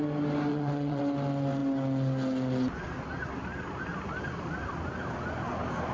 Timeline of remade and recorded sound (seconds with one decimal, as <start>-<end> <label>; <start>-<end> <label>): 0.0-0.5 recorded; 0.5-1.0 remade; 1.0-5.9 recorded